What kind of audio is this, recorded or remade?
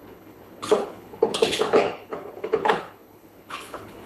remade